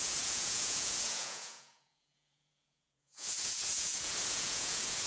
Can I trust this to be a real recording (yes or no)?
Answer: no